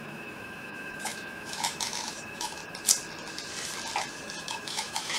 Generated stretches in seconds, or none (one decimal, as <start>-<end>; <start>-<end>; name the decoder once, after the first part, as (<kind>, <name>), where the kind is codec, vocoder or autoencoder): 0.0-2.6 (autoencoder, DAC-VAE); 4.4-5.2